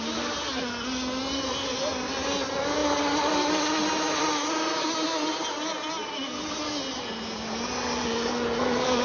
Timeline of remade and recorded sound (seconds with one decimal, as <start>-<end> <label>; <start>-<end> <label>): 0.0-9.0 recorded